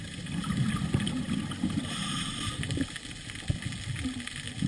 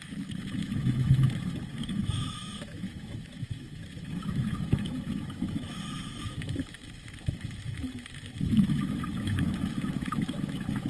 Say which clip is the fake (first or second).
second